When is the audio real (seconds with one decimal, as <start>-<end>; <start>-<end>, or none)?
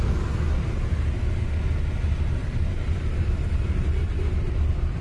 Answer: 0.0-2.4; 3.2-5.0